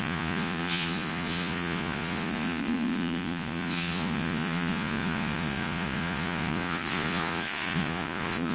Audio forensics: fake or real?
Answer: fake